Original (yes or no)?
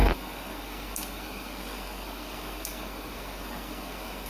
no